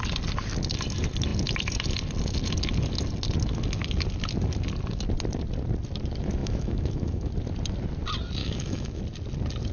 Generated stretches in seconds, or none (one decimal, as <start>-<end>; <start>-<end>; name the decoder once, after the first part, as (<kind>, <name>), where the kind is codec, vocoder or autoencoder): 6.4-7.3 (autoencoder, DAC-VAE); 8.4-9.0